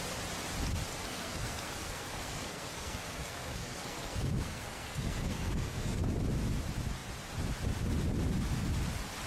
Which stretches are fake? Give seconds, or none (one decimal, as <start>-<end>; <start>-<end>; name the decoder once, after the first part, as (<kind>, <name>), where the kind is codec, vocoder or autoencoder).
1.0-6.0 (codec, SNAC)